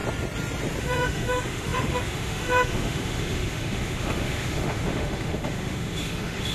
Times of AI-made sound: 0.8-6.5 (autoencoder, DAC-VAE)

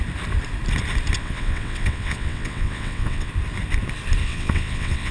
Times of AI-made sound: 1.2-3.3 (vocoder, WaveNeXt); 4.2-5.1

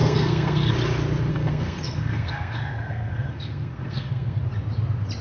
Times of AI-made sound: 0.0-0.7 (codec, SNAC); 1.3-4.4

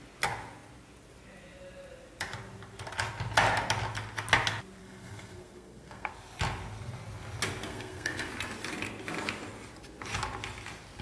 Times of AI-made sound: 4.8-6.1 (codec, SNAC); 7.7-8.3